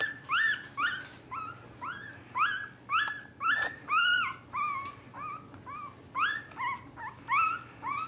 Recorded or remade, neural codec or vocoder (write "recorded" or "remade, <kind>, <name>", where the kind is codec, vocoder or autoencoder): recorded